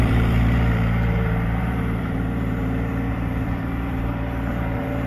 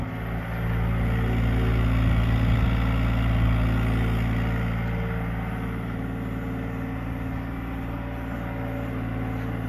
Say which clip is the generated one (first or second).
first